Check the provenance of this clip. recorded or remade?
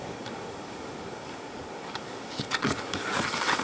remade